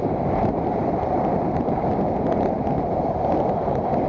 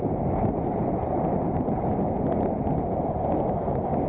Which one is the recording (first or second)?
second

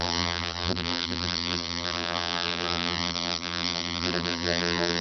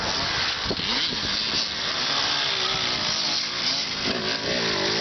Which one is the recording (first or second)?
second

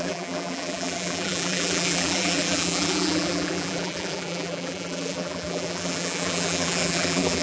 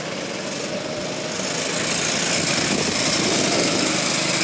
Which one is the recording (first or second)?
second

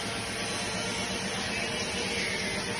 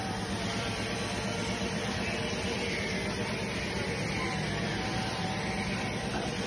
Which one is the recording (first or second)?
first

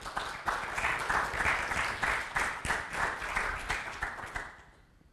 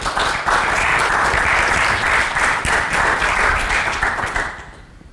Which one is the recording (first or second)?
first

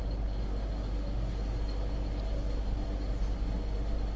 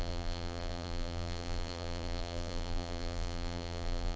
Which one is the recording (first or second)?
first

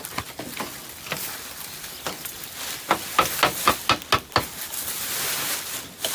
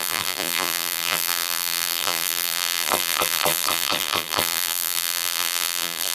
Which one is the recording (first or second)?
first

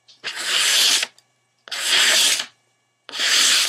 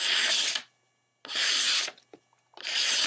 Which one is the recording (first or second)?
second